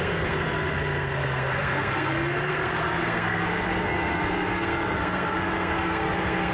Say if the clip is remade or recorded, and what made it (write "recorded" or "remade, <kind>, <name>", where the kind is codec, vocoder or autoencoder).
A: remade, codec, SNAC